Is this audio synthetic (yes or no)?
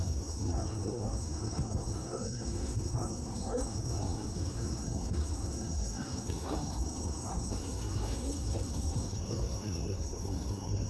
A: yes